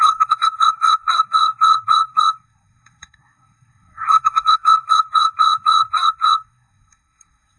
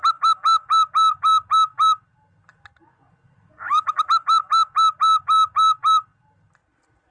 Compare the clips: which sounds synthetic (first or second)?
first